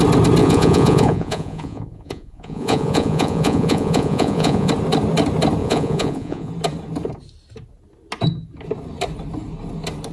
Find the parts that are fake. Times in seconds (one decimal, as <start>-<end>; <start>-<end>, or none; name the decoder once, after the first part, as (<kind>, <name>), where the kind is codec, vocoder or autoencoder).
0.4-4.7 (vocoder, Vocos); 5.6-6.5